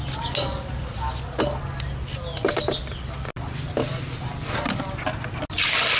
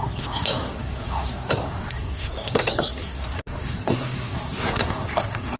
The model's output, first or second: second